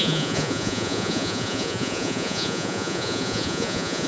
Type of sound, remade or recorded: remade